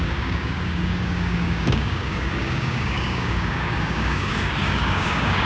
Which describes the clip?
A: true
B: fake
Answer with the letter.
B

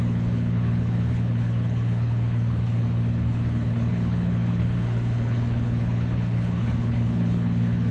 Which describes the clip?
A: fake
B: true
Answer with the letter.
A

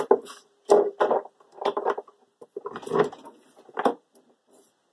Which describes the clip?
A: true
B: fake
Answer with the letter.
A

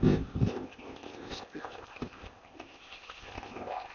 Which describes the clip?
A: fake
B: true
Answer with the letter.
A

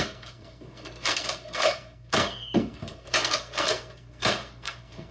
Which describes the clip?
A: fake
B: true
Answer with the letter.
A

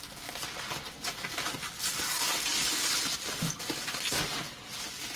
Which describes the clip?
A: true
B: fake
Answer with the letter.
A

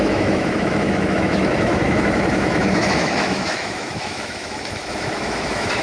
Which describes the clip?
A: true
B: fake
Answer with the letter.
B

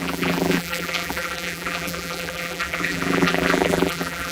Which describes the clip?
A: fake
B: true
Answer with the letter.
A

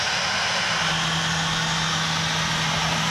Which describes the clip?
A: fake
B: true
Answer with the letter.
B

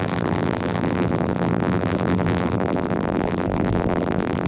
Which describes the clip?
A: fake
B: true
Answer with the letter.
A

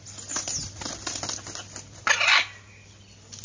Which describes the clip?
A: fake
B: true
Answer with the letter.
B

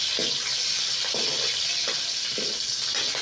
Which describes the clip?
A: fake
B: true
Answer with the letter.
B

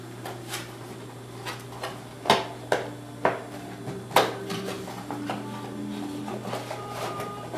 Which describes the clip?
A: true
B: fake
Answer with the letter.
A